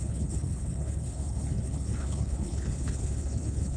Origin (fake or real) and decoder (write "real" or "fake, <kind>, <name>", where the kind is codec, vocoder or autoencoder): fake, codec, HILCodec